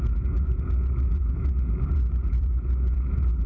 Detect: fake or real fake